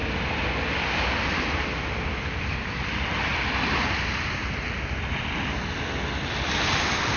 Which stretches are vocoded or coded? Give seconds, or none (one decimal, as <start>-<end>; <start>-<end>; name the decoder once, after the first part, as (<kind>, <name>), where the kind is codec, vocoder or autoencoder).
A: 0.0-3.3 (vocoder, BigVGAN v2); 6.8-7.2